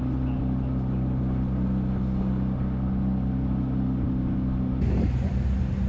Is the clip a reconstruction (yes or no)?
no